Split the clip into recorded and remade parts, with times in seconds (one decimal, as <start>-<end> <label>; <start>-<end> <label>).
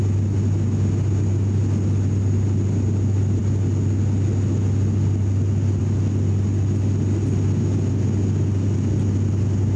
0.0-9.8 recorded